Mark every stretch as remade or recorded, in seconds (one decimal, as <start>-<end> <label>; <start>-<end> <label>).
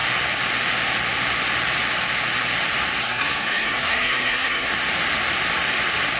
0.0-3.0 recorded; 3.0-4.7 remade; 4.7-6.2 recorded